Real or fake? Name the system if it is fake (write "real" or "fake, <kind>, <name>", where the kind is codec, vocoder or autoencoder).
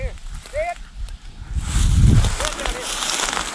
real